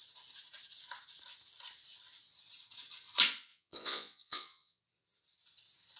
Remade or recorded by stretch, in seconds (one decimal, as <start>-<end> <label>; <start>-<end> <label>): 0.0-3.5 recorded; 3.5-4.8 remade; 4.8-6.0 recorded